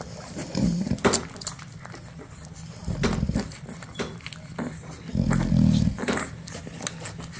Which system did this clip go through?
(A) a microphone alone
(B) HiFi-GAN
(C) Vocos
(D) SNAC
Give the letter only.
A